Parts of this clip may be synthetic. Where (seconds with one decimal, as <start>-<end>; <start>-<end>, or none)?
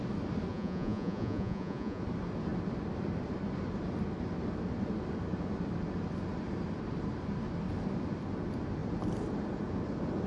0.5-2.0